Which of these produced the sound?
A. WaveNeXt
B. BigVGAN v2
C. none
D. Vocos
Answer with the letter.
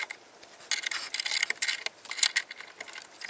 C